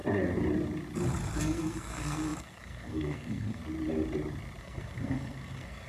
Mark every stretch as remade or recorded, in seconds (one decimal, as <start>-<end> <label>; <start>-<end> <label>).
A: 0.0-1.4 recorded; 1.4-3.6 remade; 3.6-4.6 recorded; 4.6-5.9 remade